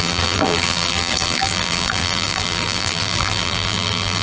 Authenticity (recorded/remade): remade